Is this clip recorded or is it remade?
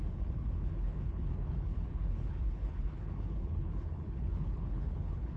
remade